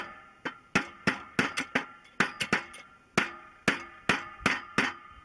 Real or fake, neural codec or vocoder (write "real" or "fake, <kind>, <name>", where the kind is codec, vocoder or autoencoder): real